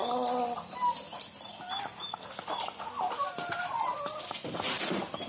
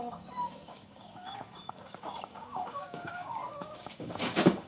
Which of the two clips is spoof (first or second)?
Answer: second